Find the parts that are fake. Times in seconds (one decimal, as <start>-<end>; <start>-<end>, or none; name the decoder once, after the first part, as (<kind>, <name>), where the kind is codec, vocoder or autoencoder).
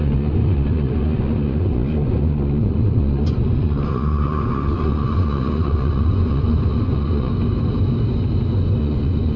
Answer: 0.0-7.3 (vocoder, Vocos); 8.8-9.4